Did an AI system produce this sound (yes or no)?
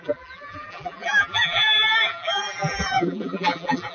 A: yes